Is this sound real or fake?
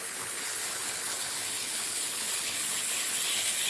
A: fake